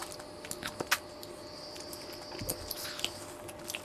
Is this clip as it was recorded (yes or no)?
yes